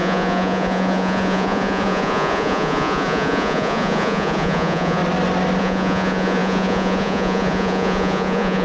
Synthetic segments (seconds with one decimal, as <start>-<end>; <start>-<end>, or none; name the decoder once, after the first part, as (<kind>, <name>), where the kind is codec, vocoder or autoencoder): 0.0-5.0 (vocoder, Vocos); 5.6-8.6

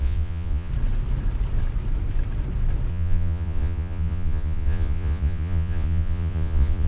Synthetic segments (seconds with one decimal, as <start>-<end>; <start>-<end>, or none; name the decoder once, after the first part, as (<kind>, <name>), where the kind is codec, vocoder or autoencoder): 0.0-0.7 (vocoder, Vocos); 2.9-6.9

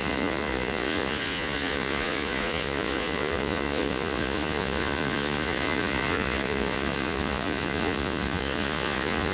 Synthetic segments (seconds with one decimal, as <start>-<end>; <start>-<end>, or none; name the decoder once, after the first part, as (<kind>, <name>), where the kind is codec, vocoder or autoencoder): 0.0-9.3 (vocoder, Vocos)

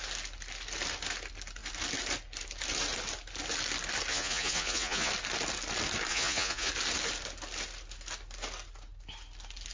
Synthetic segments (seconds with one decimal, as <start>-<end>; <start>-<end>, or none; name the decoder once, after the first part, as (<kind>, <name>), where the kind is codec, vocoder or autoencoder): 4.1-5.1 (vocoder, Vocos); 6.1-6.7

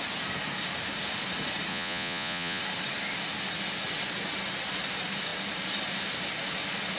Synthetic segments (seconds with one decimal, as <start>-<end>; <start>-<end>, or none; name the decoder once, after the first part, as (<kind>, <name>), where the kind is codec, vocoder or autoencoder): 1.7-2.6 (vocoder, Vocos)